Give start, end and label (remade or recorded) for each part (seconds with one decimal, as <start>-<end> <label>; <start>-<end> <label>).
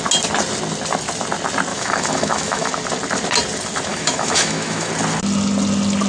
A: 0.0-1.7 recorded; 1.7-2.7 remade; 2.7-3.9 recorded; 3.9-4.9 remade; 4.9-6.1 recorded